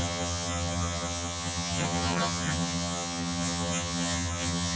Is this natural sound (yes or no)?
no